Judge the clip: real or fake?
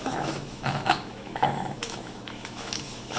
fake